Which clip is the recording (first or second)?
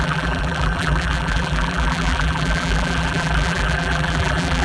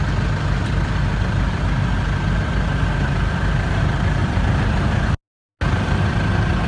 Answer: second